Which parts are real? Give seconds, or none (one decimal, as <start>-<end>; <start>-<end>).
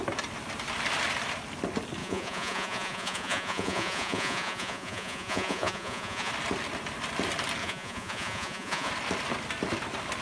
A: 0.0-2.0; 6.3-7.6; 8.9-10.2